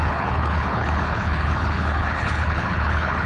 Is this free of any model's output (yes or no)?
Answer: no